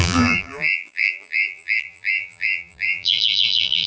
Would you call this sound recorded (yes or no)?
no